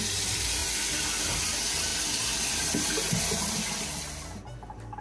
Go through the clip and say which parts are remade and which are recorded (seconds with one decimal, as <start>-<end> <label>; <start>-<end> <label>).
0.0-5.0 recorded